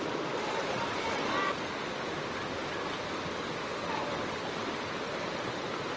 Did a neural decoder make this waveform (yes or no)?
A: no